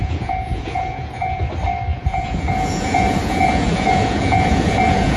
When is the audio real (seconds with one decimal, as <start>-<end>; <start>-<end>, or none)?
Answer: 1.4-1.9